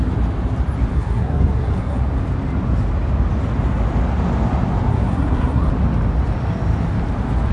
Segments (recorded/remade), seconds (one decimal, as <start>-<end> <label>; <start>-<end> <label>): 0.0-0.9 recorded; 0.9-2.0 remade; 2.0-4.9 recorded; 4.9-5.7 remade; 5.7-7.5 recorded